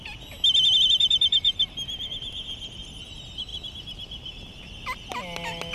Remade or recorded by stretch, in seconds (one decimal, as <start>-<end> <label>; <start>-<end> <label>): 0.0-5.7 recorded